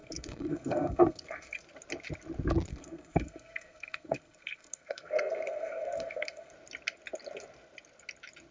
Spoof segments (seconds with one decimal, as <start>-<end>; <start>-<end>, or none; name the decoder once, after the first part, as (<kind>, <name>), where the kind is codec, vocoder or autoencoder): 0.0-1.6 (codec, SNAC); 2.7-6.5